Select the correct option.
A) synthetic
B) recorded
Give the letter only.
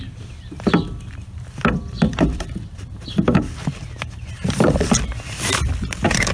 A